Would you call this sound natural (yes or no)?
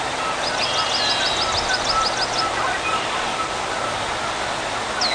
yes